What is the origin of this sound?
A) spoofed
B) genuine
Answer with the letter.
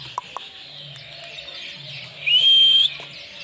B